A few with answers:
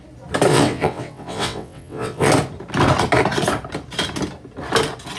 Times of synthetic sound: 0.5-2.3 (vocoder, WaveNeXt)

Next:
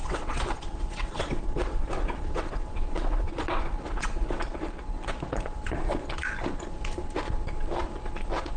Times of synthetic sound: 0.0-4.4 (vocoder, WaveNeXt)

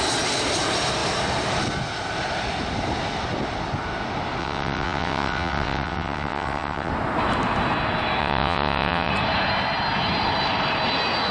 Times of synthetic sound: 4.4-6.9 (vocoder, WaveNeXt); 8.2-9.1

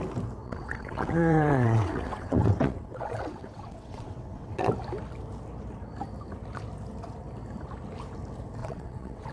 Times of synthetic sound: 0.4-4.7 (vocoder, WaveNeXt); 8.6-9.3

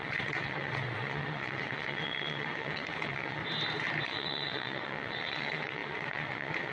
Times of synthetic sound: 0.0-3.4 (vocoder, WaveNeXt); 4.0-6.7

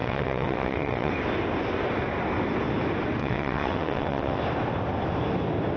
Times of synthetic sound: 0.0-1.1 (vocoder, WaveNeXt); 3.2-4.4

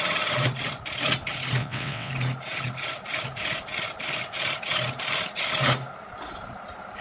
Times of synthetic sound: 1.6-2.1 (vocoder, WaveNeXt)

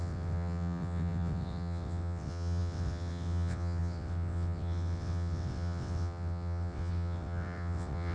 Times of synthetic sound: 0.0-8.1 (vocoder, WaveNeXt)